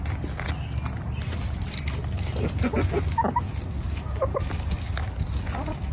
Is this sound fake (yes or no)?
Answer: no